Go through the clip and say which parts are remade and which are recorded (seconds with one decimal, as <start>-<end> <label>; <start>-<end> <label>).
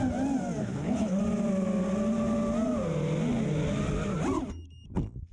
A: 0.0-0.6 recorded; 0.6-1.2 remade; 1.2-5.3 recorded